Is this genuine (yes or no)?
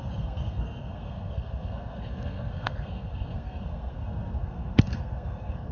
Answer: no